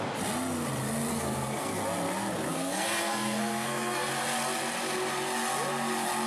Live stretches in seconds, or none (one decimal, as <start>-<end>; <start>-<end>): 0.0-1.1; 1.8-2.5; 4.1-6.3